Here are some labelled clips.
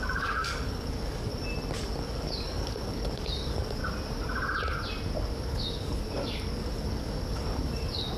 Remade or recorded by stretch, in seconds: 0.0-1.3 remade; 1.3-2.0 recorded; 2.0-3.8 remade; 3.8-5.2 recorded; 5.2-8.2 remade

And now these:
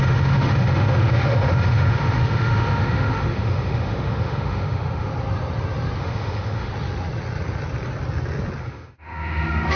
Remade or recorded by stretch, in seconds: 0.0-5.1 remade; 5.1-6.0 recorded; 6.0-6.7 remade; 6.7-8.6 recorded; 8.6-9.8 remade